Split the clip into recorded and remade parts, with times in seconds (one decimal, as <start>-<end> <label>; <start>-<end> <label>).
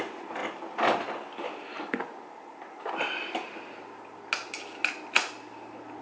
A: 0.0-6.0 recorded